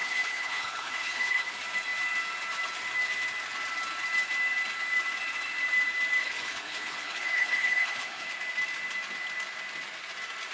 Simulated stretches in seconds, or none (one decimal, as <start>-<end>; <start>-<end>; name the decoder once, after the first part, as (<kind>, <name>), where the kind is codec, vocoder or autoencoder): 0.0-1.5 (codec, HILCodec); 6.2-8.3